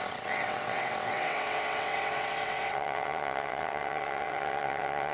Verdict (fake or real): fake